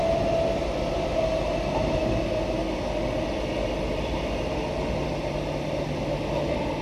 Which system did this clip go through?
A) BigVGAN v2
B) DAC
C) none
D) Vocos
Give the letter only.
C